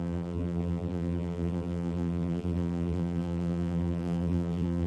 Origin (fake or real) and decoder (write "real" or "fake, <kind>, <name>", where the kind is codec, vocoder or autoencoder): fake, vocoder, BigVGAN v2